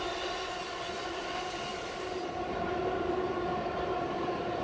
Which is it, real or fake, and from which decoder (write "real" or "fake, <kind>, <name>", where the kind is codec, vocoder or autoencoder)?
real